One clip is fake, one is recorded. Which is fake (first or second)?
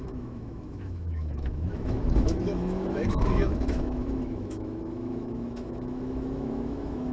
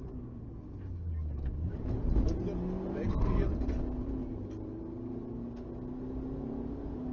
first